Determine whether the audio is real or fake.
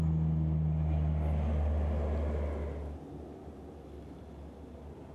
real